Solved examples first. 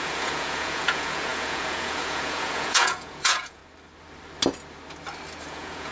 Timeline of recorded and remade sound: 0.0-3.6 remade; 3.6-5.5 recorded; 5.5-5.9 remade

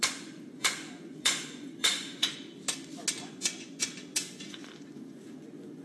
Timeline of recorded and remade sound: 0.0-2.4 remade; 2.4-3.2 recorded; 3.2-5.8 remade

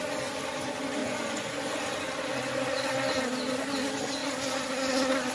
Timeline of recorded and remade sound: 0.0-1.0 recorded; 1.0-1.8 remade; 1.8-5.3 recorded

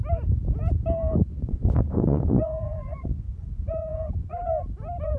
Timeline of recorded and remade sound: 0.0-1.3 recorded; 1.3-4.4 remade; 4.4-5.2 recorded

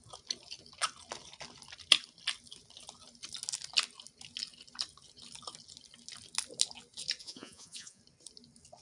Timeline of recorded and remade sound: 0.0-7.2 recorded; 7.2-8.0 remade; 8.0-8.8 recorded

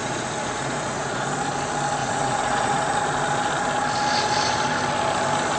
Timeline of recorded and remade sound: 0.0-1.3 remade; 1.3-2.0 recorded; 2.0-3.0 remade; 3.0-5.6 recorded

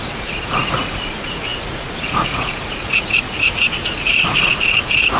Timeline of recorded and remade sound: 0.0-5.2 remade